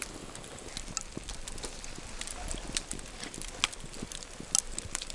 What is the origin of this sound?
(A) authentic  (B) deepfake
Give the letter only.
A